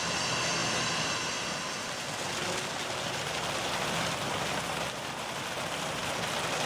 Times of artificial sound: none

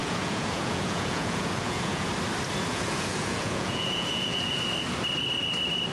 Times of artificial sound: 0.0-2.1 (vocoder, Vocos); 2.7-4.6